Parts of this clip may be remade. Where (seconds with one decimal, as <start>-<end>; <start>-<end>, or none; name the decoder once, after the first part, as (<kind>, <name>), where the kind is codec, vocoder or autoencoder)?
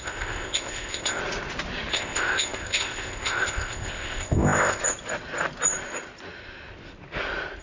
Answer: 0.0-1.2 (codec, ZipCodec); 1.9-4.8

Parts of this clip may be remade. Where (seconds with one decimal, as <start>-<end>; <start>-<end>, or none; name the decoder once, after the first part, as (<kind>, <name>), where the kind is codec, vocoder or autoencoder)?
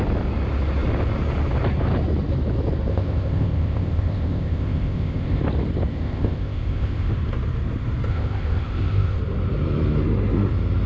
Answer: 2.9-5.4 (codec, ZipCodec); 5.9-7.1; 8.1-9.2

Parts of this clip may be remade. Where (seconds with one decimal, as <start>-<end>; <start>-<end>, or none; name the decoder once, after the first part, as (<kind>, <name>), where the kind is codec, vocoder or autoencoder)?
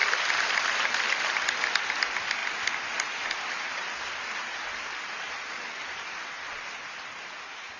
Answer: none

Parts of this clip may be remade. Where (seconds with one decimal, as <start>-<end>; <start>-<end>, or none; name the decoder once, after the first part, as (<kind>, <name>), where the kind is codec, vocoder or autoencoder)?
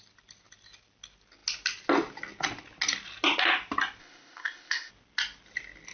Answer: 4.0-4.9 (codec, ZipCodec)